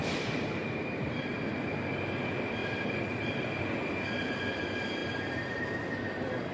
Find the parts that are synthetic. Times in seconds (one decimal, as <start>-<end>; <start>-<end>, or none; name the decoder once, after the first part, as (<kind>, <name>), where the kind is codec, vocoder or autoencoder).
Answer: 0.6-1.6 (vocoder, BigVGAN v2); 2.6-3.6; 5.0-5.6